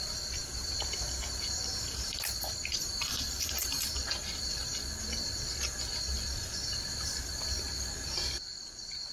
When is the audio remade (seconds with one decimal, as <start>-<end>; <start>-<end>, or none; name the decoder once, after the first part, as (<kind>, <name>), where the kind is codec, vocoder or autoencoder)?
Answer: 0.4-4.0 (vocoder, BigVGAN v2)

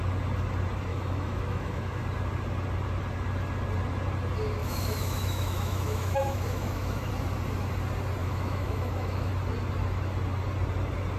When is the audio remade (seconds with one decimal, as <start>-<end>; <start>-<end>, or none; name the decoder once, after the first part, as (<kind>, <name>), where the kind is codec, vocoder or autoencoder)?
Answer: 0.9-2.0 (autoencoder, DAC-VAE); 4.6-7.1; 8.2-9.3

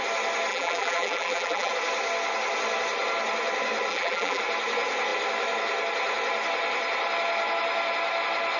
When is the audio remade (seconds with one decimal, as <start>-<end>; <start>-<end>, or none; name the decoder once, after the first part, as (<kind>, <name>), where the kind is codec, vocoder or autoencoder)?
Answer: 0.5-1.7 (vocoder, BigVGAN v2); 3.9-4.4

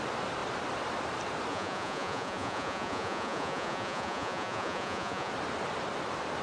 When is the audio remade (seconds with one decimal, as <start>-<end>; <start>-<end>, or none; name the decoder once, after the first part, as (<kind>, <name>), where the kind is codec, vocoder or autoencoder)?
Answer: 1.5-5.3 (vocoder, Vocos)